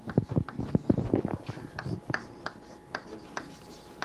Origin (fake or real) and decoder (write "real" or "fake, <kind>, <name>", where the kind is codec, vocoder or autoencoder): real